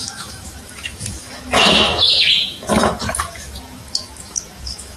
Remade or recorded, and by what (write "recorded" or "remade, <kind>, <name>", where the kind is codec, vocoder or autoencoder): remade, autoencoder, DAC-VAE